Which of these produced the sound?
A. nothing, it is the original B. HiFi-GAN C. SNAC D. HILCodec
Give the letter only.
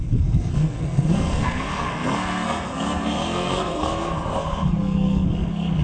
C